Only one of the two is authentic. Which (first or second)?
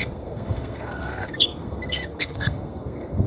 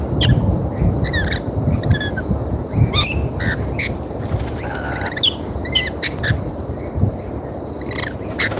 second